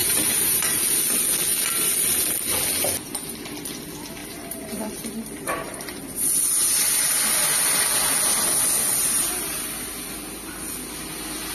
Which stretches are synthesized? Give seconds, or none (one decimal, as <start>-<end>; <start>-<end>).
0.0-1.0; 4.2-6.0